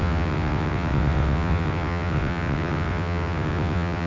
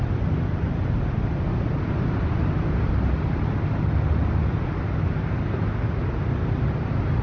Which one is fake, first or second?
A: first